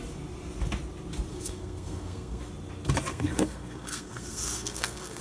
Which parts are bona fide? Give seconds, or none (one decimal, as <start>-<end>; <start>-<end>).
0.0-1.3; 2.4-3.1